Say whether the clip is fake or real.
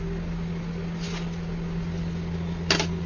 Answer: real